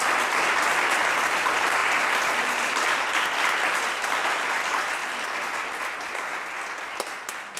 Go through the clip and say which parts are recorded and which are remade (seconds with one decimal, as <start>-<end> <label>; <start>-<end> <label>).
0.0-7.6 recorded